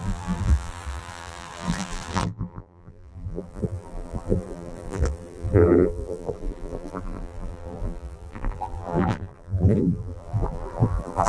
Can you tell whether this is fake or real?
fake